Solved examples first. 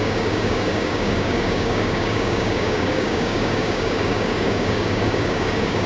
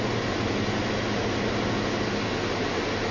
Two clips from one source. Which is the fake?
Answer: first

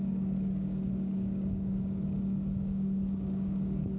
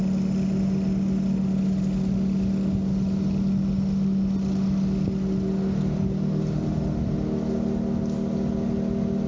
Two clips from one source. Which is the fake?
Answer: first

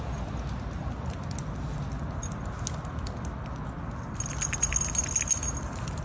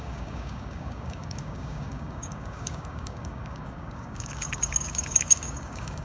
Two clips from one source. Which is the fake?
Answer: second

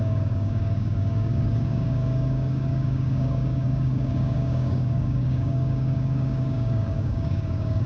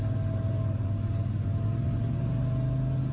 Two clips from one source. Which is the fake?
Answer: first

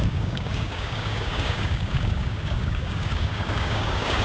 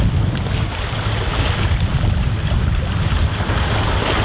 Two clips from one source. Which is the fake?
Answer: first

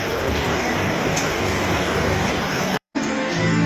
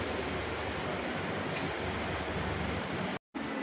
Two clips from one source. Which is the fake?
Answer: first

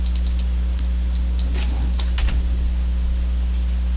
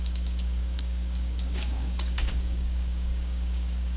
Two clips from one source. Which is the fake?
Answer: second